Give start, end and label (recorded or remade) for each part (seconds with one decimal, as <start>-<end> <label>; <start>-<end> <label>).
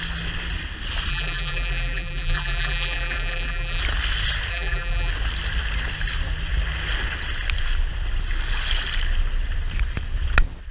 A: 0.0-1.1 recorded; 1.1-3.8 remade; 3.8-4.5 recorded; 4.5-5.1 remade; 5.1-10.7 recorded